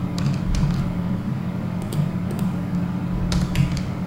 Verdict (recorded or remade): remade